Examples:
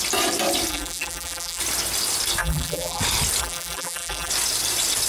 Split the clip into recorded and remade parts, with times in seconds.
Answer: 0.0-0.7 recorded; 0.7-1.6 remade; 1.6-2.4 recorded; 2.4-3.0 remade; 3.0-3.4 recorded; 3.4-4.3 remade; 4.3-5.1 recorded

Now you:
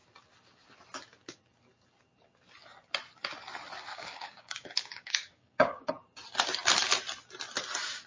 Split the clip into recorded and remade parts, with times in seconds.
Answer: 0.0-3.9 recorded; 3.9-5.9 remade; 5.9-8.1 recorded